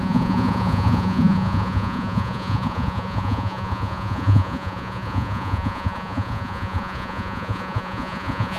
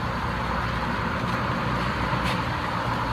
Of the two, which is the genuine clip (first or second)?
second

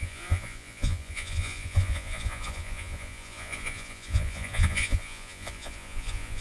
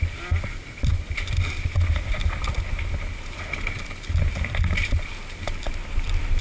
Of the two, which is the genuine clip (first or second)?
second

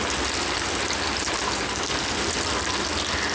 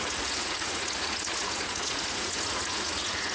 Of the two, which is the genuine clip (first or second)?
first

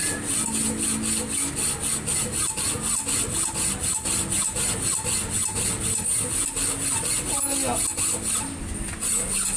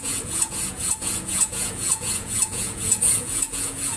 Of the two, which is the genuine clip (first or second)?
first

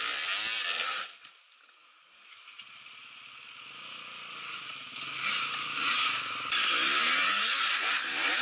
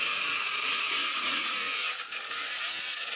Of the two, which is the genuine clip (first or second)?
first